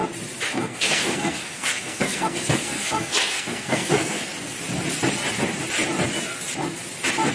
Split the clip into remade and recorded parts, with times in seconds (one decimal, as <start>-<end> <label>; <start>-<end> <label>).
0.0-0.5 recorded; 0.5-4.3 remade; 4.3-7.3 recorded